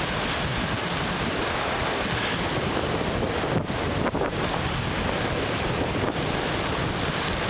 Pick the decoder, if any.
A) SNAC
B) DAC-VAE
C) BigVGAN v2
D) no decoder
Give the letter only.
D